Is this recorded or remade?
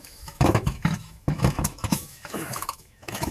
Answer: remade